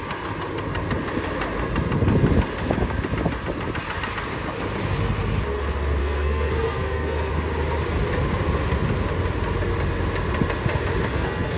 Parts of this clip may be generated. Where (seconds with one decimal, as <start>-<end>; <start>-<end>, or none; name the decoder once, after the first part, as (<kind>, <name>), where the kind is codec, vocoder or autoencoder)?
6.0-7.3 (codec, SNAC); 11.1-11.6